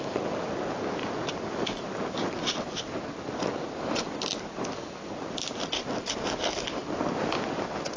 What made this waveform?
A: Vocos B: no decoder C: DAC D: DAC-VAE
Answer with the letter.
B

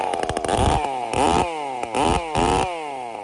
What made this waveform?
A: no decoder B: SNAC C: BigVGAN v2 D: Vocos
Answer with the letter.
A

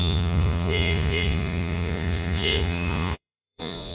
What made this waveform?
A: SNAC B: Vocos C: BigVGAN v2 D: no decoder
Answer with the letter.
B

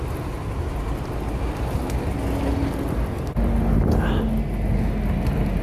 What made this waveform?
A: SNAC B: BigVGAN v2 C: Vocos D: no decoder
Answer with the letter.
D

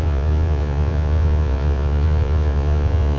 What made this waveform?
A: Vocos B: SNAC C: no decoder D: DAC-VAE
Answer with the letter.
A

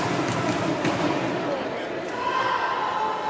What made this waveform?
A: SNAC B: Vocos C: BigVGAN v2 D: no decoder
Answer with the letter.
D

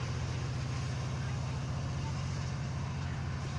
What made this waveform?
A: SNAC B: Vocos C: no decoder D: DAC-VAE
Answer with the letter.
C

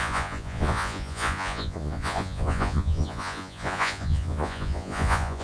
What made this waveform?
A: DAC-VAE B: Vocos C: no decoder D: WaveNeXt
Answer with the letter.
B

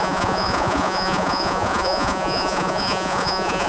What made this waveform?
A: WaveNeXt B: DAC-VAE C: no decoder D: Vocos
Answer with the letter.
D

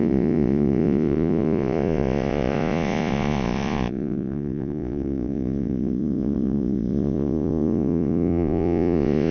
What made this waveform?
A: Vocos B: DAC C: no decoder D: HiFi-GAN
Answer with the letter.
A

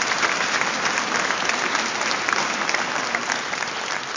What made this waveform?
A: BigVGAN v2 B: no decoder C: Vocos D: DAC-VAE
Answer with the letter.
B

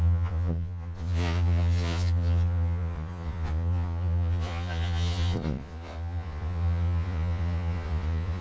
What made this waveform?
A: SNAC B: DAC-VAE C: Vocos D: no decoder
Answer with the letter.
C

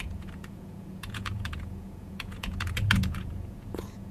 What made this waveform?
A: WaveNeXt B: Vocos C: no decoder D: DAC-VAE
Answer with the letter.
B